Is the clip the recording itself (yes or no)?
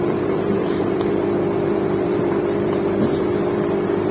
no